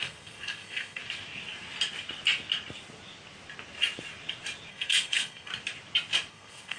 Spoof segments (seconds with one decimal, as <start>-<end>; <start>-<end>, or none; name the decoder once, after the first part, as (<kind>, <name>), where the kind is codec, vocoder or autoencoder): 0.0-1.0 (codec, SNAC); 4.7-5.5; 6.3-6.8